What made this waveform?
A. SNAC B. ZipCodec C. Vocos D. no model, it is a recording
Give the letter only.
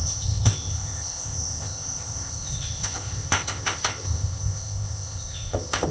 B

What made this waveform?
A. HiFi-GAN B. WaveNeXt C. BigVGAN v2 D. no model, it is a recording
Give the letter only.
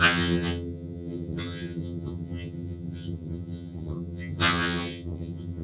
A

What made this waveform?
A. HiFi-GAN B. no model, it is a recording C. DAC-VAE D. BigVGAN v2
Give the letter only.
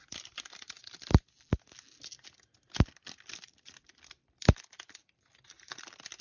B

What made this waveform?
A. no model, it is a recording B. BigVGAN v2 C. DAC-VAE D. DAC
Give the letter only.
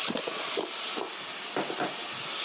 A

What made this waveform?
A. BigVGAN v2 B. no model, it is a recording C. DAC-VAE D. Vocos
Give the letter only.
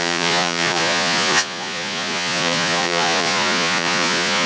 D